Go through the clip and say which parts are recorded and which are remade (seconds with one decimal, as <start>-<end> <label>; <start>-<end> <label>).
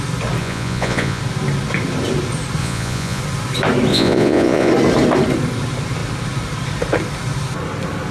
0.0-0.4 recorded; 0.4-1.2 remade; 1.2-2.6 recorded; 2.6-3.2 remade; 3.2-3.9 recorded; 3.9-4.7 remade; 4.7-8.1 recorded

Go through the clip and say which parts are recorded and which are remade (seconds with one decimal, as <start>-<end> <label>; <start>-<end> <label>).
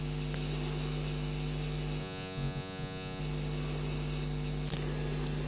0.0-2.0 recorded; 2.0-3.2 remade; 3.2-5.5 recorded